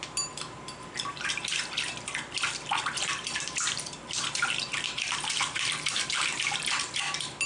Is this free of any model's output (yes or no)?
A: no